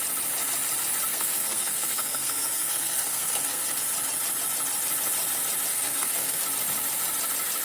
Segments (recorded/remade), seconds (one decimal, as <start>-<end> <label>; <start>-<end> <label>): 0.0-1.1 recorded; 1.1-3.8 remade; 3.8-5.7 recorded; 5.7-6.4 remade; 6.4-7.6 recorded

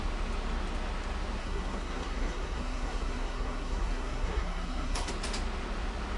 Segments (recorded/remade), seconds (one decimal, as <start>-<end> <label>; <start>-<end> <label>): 0.0-1.4 recorded; 1.4-5.1 remade; 5.1-6.2 recorded

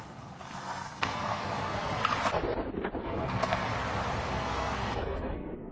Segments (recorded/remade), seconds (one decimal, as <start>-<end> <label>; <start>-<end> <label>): 0.0-2.0 remade; 2.0-3.0 recorded; 3.0-3.7 remade; 3.7-4.3 recorded; 4.3-5.7 remade

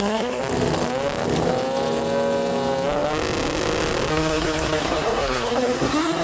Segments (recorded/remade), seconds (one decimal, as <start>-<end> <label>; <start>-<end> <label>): 0.0-0.4 remade; 0.4-4.1 recorded; 4.1-6.2 remade

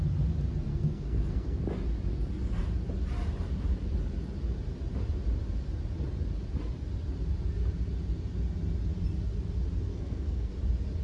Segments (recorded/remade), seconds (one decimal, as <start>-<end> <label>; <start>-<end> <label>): 0.0-0.7 recorded; 0.7-1.6 remade; 1.6-9.9 recorded; 9.9-10.5 remade; 10.5-11.0 recorded